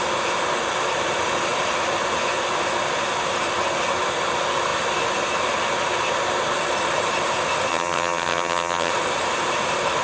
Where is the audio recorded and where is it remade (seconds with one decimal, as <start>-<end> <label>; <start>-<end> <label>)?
0.0-7.7 recorded; 7.7-8.9 remade; 8.9-10.0 recorded